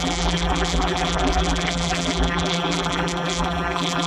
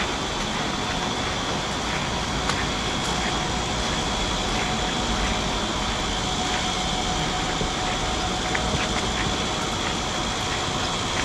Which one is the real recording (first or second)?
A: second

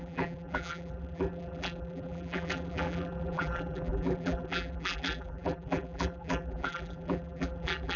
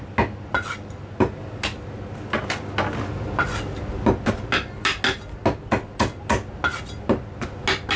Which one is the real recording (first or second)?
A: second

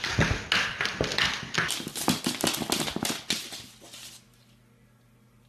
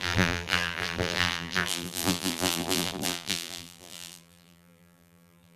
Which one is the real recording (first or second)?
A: first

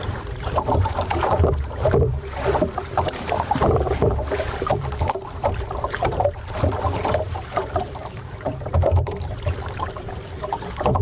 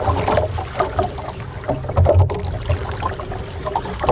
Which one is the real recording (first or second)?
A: second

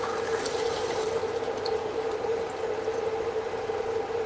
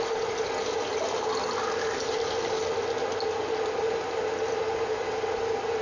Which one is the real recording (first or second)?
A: second